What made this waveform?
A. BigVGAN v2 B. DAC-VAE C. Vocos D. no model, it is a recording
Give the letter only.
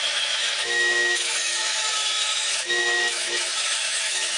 B